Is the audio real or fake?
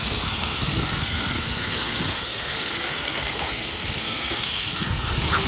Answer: fake